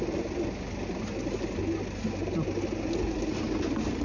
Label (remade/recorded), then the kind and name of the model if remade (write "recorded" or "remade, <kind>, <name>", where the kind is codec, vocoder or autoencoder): recorded